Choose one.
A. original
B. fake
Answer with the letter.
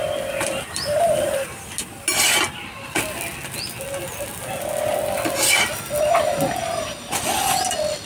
A